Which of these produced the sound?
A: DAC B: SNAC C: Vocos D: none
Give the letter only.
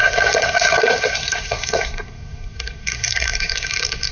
B